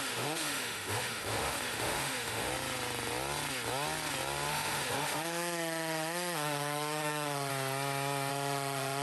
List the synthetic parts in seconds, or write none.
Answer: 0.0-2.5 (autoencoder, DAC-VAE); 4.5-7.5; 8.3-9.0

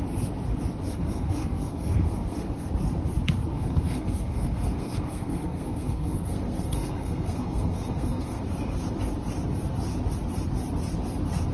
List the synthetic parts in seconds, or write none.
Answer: 0.9-2.7 (codec, SNAC); 3.5-8.4

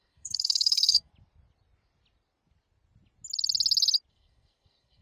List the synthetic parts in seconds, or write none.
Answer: 0.0-1.1 (codec, SNAC); 4.1-5.0

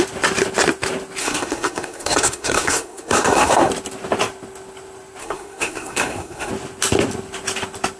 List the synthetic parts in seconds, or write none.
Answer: 1.2-3.7 (codec, SNAC); 5.2-6.5

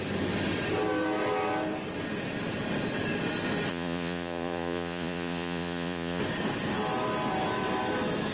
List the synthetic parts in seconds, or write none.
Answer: 3.7-6.2 (vocoder, Vocos)

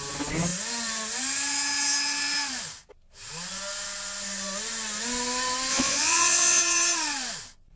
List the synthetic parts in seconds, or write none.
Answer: 5.7-6.6 (vocoder, Vocos)

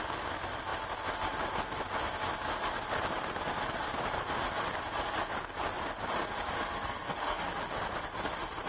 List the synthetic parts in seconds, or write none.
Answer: 6.7-7.5 (codec, SNAC)

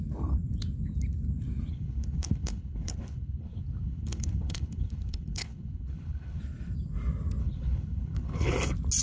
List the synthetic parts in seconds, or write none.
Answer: 1.7-6.4 (codec, HILCodec); 7.4-8.5